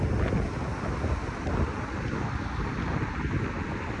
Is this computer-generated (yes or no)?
no